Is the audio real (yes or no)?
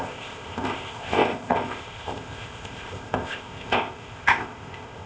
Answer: no